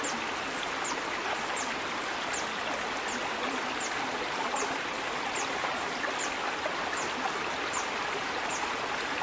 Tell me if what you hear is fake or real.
real